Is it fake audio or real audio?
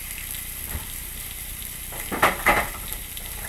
fake